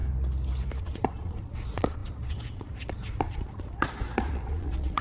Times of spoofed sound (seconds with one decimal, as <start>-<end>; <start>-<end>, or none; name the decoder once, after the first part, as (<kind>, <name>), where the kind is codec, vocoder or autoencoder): 0.8-5.0 (vocoder, Vocos)